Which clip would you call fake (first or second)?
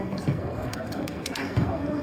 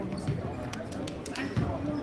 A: first